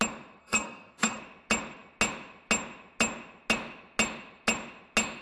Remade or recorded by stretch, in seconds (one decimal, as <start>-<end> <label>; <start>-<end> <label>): 0.0-0.4 recorded; 0.4-1.2 remade; 1.2-5.2 recorded